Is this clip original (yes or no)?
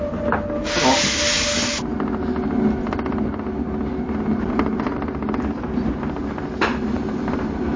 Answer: yes